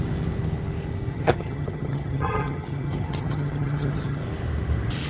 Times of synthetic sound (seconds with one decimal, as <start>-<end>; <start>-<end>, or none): 1.1-4.2